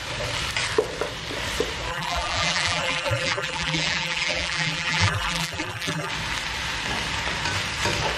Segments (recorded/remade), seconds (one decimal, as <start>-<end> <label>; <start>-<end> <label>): 0.0-1.9 recorded; 1.9-6.1 remade; 6.1-8.2 recorded